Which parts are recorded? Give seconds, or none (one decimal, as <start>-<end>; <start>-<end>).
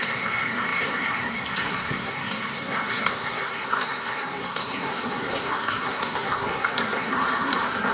none